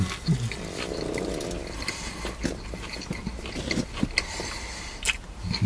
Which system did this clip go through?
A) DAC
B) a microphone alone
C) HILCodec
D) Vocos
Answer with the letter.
B